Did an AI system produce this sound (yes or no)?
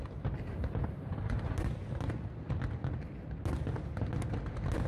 no